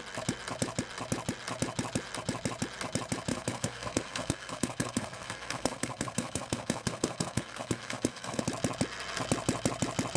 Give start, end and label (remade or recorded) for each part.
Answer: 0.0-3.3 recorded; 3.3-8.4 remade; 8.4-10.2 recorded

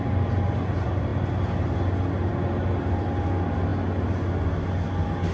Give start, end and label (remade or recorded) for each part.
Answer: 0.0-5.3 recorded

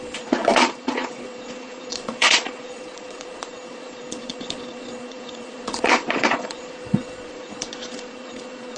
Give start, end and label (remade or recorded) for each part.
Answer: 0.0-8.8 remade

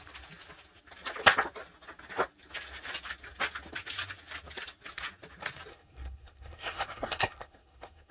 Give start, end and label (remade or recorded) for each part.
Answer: 0.0-5.7 recorded; 5.7-8.1 remade